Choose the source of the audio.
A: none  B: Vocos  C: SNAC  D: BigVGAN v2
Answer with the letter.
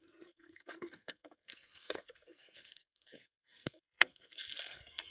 C